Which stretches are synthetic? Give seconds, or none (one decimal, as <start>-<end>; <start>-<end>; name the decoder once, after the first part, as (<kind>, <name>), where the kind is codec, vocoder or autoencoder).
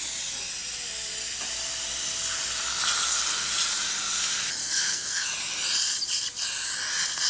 4.6-5.3 (codec, SNAC)